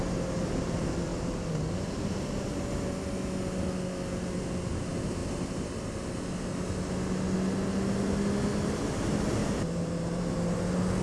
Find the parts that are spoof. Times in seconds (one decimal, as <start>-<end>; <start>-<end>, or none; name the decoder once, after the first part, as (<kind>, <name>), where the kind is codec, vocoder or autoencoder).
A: 9.4-10.6 (vocoder, BigVGAN v2)